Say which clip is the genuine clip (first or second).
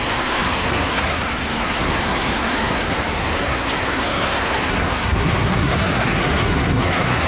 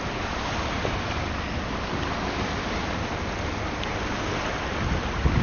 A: second